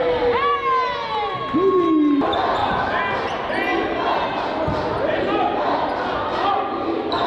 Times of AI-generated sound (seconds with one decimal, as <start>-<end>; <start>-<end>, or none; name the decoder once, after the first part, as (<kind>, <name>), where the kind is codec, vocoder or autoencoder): none